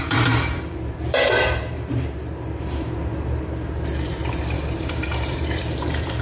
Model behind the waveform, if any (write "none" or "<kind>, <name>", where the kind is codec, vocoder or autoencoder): vocoder, BigVGAN v2